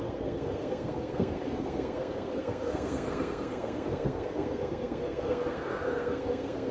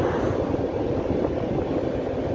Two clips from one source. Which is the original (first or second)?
second